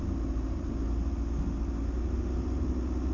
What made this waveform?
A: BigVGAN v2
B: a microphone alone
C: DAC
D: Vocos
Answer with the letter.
B